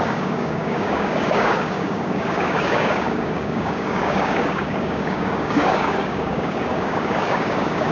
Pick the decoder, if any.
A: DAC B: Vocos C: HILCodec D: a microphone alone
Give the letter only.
A